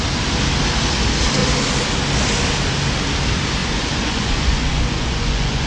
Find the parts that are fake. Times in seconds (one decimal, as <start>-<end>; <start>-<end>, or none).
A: 3.6-5.7